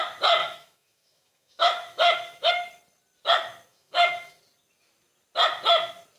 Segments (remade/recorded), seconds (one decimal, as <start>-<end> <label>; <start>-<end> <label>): 0.0-0.4 recorded; 0.4-2.5 remade; 2.5-3.7 recorded; 3.7-4.4 remade; 4.4-6.2 recorded